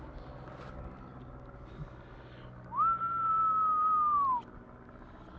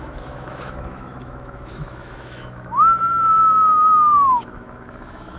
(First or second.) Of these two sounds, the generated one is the second